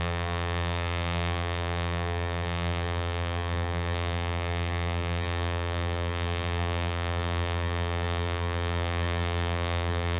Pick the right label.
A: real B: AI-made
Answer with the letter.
B